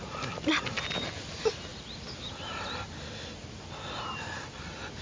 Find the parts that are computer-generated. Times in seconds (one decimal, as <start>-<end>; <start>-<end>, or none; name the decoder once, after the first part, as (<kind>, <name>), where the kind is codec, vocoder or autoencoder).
none